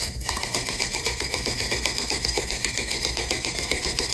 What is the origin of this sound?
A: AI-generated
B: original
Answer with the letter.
A